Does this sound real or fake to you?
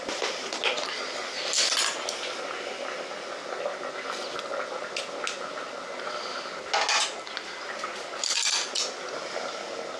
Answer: real